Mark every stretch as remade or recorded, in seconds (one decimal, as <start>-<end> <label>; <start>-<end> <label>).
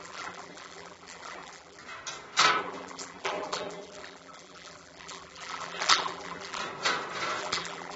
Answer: 0.0-1.8 remade; 1.8-2.6 recorded; 2.6-6.6 remade; 6.6-7.4 recorded; 7.4-8.0 remade